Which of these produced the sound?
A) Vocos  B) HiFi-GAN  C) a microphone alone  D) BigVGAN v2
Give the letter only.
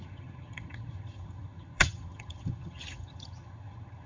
B